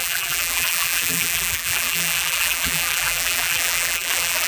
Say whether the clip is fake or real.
fake